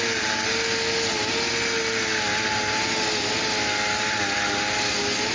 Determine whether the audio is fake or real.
real